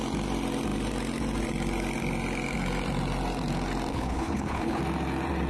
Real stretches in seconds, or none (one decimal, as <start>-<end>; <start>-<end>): 0.0-3.9; 4.8-5.5

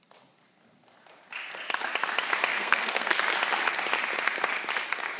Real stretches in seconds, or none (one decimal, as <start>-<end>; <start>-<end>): 0.0-2.5; 3.2-5.2